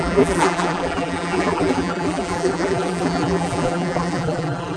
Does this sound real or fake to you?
fake